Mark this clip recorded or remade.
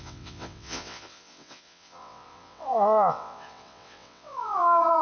remade